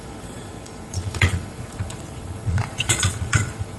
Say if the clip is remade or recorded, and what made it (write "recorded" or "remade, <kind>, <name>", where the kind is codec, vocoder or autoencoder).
remade, vocoder, Vocos